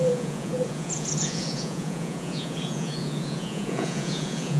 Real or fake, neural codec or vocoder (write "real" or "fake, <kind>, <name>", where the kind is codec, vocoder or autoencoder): fake, vocoder, Vocos